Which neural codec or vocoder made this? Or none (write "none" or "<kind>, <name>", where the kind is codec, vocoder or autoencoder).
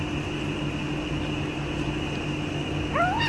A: none